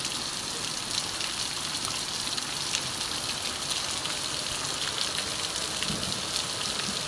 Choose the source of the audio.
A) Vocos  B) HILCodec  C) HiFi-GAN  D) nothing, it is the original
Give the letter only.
D